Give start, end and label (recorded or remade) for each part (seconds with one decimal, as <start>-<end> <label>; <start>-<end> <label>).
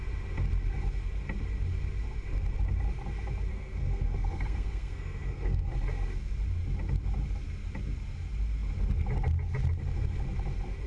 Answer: 0.0-3.5 recorded; 3.5-5.7 remade; 5.7-10.9 recorded